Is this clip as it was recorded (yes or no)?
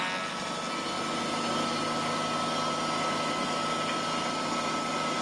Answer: yes